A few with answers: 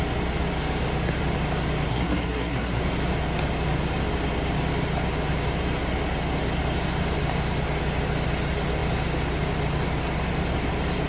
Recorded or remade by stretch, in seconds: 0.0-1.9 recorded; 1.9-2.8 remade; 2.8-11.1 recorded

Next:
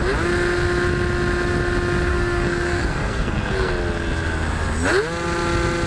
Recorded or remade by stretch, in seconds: 0.0-2.1 recorded; 2.1-3.7 remade; 3.7-5.9 recorded

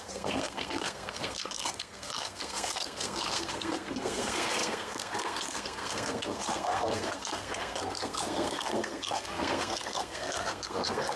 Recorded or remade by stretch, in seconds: 0.0-11.2 remade

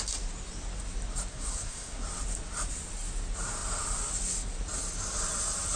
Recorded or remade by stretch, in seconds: 0.0-1.3 recorded; 1.3-2.0 remade; 2.0-5.8 recorded

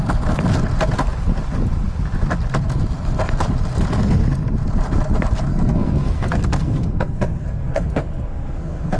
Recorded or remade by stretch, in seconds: 0.0-5.5 recorded; 5.5-9.0 remade

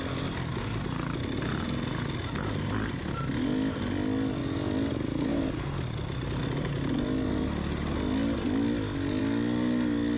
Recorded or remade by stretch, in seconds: 0.0-10.2 recorded

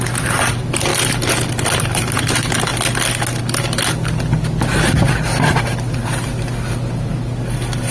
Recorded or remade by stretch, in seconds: 0.0-7.9 recorded